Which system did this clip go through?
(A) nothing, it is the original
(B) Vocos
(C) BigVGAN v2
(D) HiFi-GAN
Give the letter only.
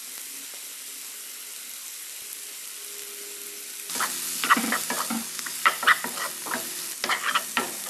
A